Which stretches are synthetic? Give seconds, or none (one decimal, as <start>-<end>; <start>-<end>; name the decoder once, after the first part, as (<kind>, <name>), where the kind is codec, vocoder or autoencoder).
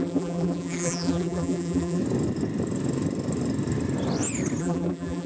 0.0-2.0 (vocoder, BigVGAN v2); 4.6-5.3